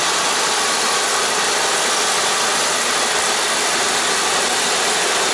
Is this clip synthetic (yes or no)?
no